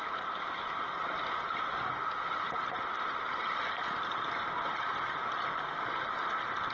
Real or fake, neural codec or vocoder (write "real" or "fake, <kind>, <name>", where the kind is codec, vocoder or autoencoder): real